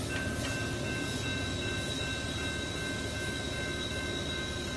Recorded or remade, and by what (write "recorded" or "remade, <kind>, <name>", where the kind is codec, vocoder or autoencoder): recorded